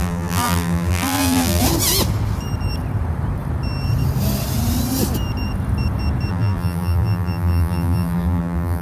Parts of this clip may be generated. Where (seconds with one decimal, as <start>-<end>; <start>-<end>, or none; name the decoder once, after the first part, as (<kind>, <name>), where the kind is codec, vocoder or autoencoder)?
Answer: 0.0-1.6 (vocoder, BigVGAN v2); 6.3-8.8